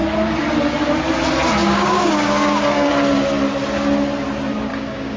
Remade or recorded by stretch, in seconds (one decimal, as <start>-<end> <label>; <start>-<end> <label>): 0.0-1.6 recorded; 1.6-2.9 remade; 2.9-4.7 recorded; 4.7-5.2 remade